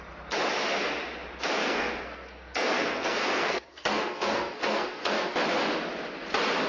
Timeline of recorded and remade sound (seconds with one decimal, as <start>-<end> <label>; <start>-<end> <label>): 0.0-1.6 recorded; 1.6-5.3 remade; 5.3-6.7 recorded